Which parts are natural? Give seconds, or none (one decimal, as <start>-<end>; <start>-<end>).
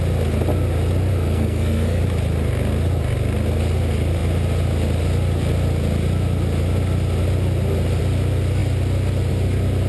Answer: 0.0-1.1; 2.0-9.9